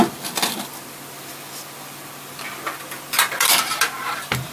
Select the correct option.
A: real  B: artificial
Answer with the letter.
B